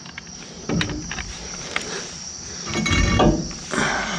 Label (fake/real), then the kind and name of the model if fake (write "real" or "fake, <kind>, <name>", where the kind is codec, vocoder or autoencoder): real